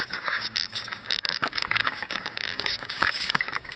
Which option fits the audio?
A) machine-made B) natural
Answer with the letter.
A